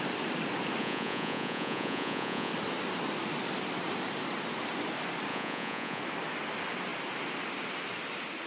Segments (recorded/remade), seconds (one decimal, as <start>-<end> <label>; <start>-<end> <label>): 0.0-0.8 recorded; 0.8-2.5 remade; 2.5-5.3 recorded; 5.3-6.0 remade; 6.0-8.5 recorded